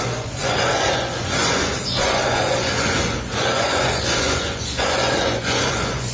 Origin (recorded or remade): remade